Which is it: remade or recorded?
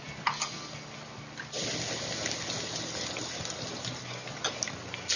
recorded